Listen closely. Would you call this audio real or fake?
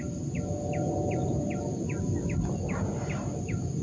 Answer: real